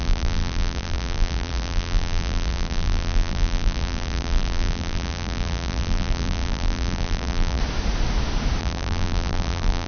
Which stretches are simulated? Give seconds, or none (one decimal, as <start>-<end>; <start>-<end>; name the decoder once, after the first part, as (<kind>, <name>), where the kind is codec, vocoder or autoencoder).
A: 0.0-7.6 (vocoder, BigVGAN v2); 8.6-9.9